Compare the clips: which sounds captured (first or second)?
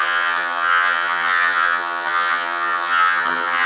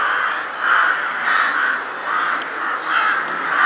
second